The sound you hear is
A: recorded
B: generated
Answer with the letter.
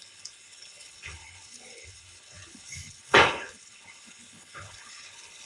B